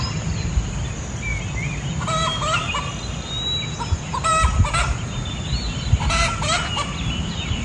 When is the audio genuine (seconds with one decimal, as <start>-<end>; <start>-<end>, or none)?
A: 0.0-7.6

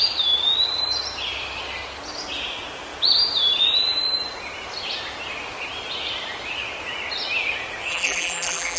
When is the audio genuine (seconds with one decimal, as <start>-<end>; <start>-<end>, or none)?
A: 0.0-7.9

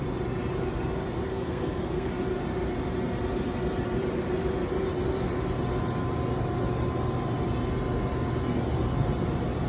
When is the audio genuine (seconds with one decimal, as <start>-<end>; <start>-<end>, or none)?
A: 0.0-1.3; 2.1-9.7